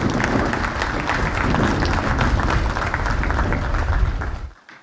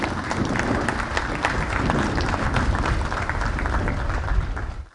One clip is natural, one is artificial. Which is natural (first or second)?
first